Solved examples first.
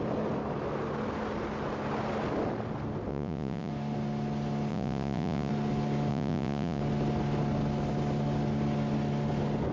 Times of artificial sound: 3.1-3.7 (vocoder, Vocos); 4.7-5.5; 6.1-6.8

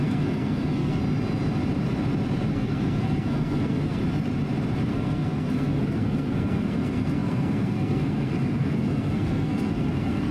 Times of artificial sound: 0.0-1.0 (codec, SNAC); 2.5-4.0; 4.9-10.3

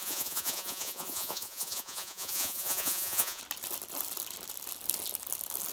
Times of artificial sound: 0.0-3.4 (vocoder, Vocos)

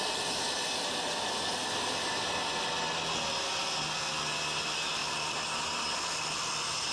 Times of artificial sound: 5.0-6.1 (vocoder, BigVGAN v2)